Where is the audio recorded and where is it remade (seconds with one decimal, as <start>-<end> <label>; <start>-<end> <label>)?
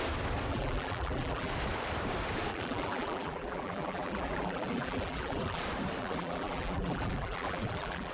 0.0-0.5 recorded; 0.5-1.5 remade; 1.5-2.5 recorded; 2.5-5.6 remade; 5.6-6.0 recorded; 6.0-8.1 remade